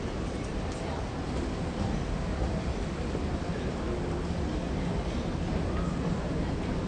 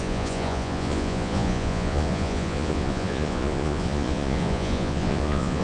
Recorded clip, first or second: first